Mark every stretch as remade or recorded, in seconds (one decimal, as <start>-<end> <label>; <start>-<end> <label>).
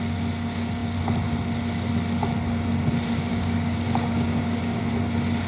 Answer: 0.0-3.3 recorded; 3.3-4.8 remade; 4.8-5.5 recorded